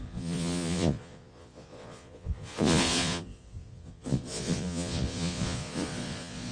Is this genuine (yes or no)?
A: no